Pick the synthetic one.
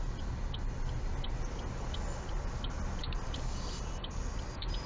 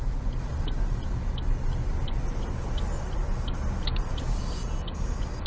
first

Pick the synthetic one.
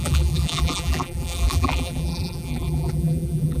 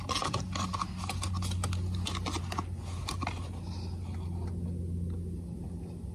first